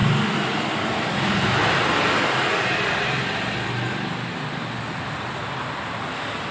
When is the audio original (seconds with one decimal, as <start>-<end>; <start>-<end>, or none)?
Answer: 0.0-6.5